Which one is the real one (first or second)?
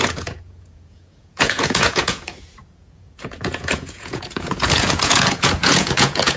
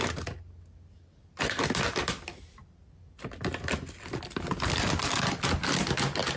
second